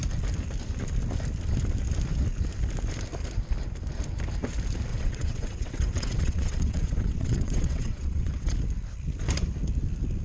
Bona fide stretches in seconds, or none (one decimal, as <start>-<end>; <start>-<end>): 0.0-4.9; 8.5-10.2